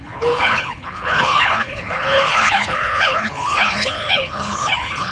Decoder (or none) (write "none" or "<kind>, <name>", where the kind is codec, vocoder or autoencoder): codec, HILCodec